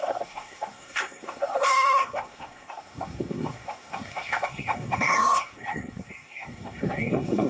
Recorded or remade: remade